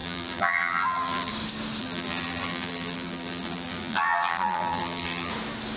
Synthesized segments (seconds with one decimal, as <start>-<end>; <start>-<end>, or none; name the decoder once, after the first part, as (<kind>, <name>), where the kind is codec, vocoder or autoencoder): 0.0-1.3 (vocoder, BigVGAN v2); 1.8-5.3